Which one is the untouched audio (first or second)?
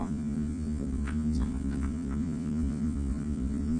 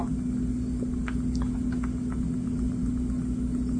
second